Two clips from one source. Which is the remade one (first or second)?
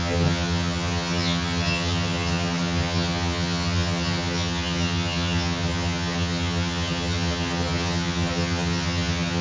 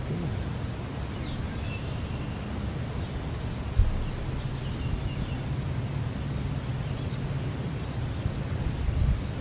first